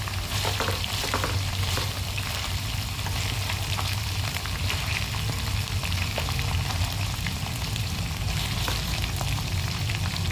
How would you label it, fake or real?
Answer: fake